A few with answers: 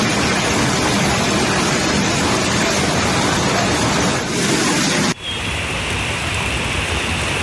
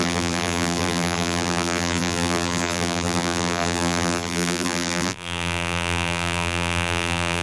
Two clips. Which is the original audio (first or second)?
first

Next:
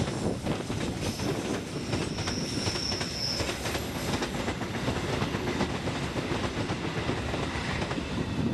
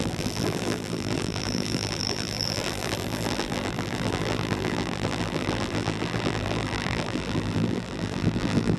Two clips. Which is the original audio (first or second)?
first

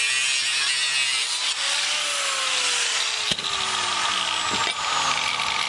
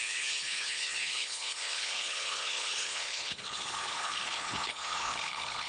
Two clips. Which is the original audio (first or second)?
first